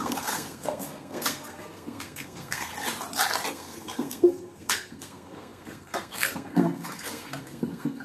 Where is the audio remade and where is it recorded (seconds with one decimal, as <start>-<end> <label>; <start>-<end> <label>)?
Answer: 0.0-2.7 remade; 2.7-3.5 recorded; 3.5-8.0 remade